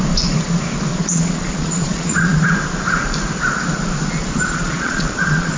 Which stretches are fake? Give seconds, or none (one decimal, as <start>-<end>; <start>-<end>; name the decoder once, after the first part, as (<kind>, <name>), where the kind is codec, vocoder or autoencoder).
0.9-2.4 (vocoder, Vocos); 4.2-5.6